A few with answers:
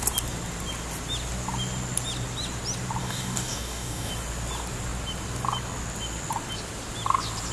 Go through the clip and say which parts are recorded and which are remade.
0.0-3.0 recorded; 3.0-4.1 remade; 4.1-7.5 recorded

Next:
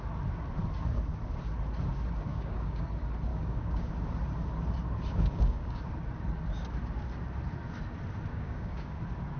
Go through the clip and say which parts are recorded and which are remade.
0.0-2.3 recorded; 2.3-2.8 remade; 2.8-3.3 recorded; 3.3-3.9 remade; 3.9-5.1 recorded; 5.1-5.8 remade; 5.8-8.3 recorded; 8.3-9.0 remade; 9.0-9.4 recorded

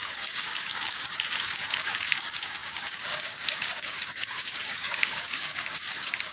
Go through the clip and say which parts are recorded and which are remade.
0.0-6.3 remade

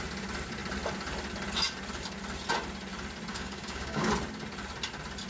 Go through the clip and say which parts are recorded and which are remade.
0.0-3.3 recorded; 3.3-4.1 remade; 4.1-5.3 recorded

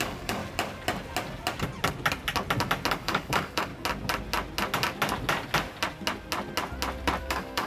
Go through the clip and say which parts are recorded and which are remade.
0.0-0.4 remade; 0.4-2.9 recorded; 2.9-3.7 remade; 3.7-7.2 recorded; 7.2-7.7 remade